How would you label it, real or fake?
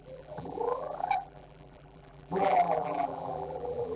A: fake